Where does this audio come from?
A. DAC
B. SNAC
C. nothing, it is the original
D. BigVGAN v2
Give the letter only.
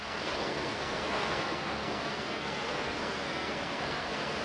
B